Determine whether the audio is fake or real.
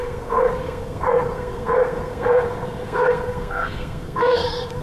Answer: fake